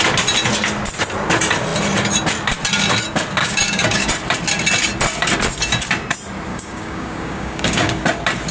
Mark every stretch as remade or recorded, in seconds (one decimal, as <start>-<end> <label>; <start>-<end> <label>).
0.0-3.4 recorded; 3.4-4.1 remade; 4.1-6.5 recorded; 6.5-8.0 remade; 8.0-8.5 recorded